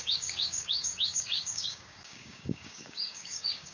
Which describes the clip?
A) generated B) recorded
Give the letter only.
A